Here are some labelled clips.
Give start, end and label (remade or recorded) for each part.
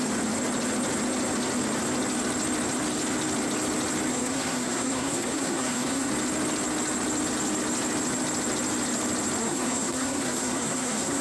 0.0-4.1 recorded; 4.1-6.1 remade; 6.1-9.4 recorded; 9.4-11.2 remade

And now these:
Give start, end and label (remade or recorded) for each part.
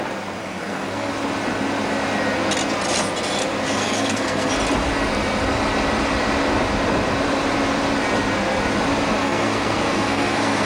0.0-0.4 recorded; 0.4-1.1 remade; 1.1-3.8 recorded; 3.8-4.5 remade; 4.5-9.2 recorded; 9.2-10.7 remade